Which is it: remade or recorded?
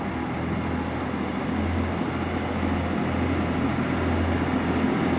recorded